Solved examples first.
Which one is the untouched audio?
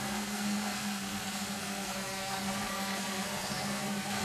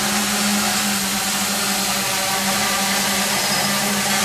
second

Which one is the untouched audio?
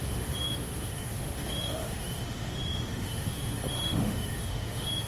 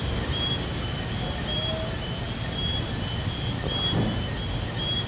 second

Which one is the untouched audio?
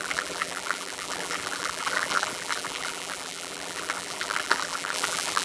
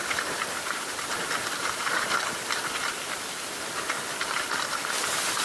second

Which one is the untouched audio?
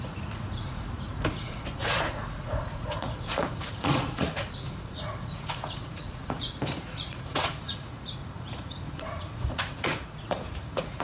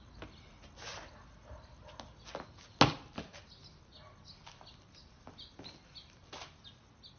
second